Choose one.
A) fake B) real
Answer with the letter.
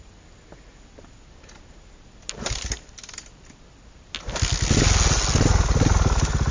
B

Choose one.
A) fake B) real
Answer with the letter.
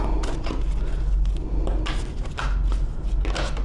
B